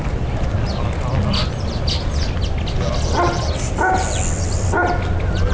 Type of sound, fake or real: real